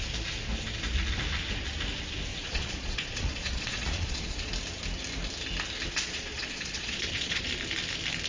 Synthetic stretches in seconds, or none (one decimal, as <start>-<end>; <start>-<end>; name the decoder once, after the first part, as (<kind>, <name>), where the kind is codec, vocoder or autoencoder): 2.3-4.5 (vocoder, Vocos); 5.9-7.5